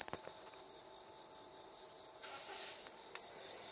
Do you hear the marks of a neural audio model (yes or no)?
no